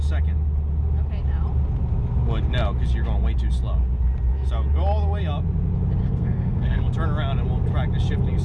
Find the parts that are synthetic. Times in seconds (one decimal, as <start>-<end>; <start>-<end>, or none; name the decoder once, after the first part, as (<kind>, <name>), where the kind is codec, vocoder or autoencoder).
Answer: 6.0-6.8 (codec, SNAC)